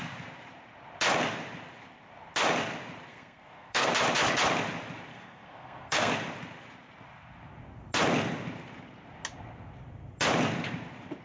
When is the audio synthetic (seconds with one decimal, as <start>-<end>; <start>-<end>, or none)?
3.1-3.9; 5.1-6.1